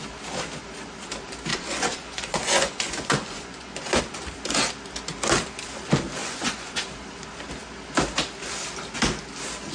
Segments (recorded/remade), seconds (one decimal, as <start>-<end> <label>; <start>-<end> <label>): 0.0-1.5 recorded; 1.5-4.0 remade; 4.0-6.2 recorded; 6.2-6.8 remade; 6.8-9.7 recorded